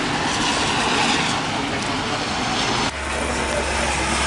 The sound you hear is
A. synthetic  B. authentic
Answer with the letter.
B